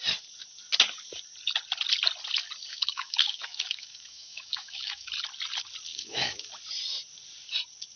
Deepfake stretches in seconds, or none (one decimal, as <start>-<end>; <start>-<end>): 2.7-5.1; 5.9-6.5